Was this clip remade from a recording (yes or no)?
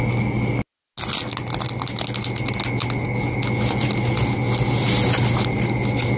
no